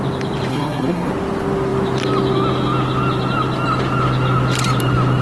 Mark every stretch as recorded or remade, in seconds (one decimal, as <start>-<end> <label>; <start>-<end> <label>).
0.0-0.5 recorded; 0.5-1.1 remade; 1.1-5.2 recorded